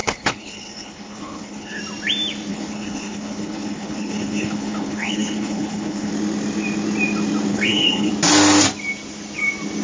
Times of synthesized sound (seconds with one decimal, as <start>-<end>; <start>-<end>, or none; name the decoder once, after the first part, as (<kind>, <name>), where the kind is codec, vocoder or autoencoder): 0.0-1.8 (codec, HILCodec); 2.5-6.1; 7.5-8.1